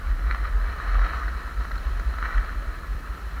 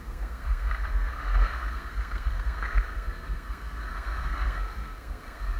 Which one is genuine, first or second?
first